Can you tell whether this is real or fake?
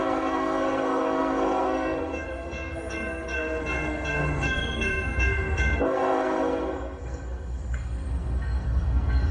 fake